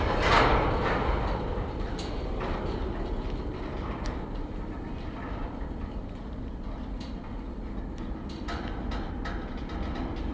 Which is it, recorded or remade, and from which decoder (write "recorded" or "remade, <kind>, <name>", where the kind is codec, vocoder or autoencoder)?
recorded